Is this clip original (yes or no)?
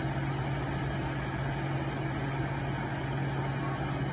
yes